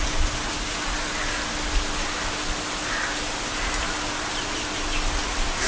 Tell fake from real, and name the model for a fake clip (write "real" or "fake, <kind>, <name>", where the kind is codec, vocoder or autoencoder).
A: real